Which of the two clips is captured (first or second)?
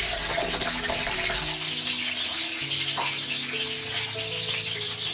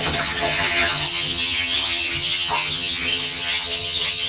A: first